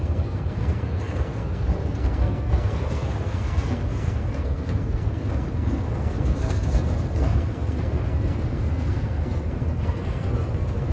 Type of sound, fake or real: fake